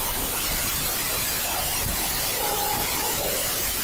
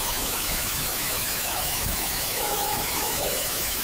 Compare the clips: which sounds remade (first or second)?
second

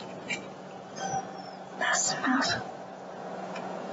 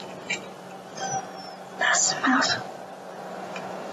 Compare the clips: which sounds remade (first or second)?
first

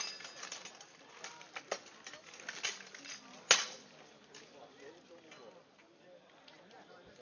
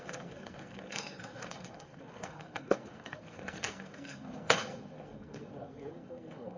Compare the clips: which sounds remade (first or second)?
second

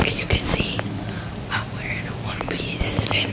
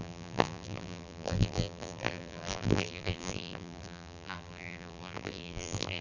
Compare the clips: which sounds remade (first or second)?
second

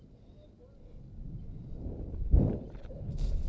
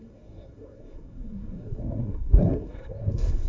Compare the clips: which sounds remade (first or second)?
second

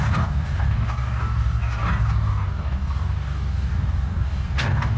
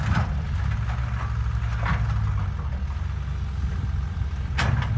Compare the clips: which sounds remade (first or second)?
first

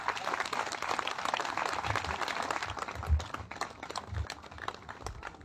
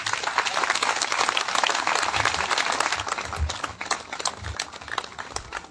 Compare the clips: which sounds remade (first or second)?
first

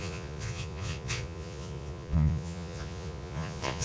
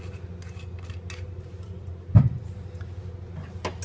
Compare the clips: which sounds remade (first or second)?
first